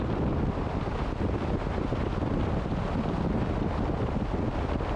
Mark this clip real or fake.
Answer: real